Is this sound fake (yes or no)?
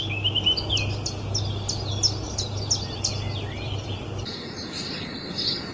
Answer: no